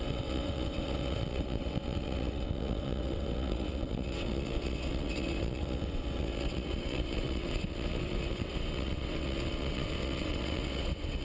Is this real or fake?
fake